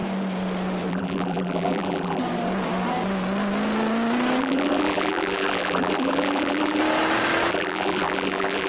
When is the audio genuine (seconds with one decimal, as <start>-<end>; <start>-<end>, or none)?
0.0-0.9; 2.2-4.4; 6.8-7.5